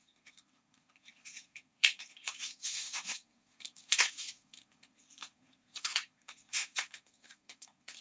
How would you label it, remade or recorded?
remade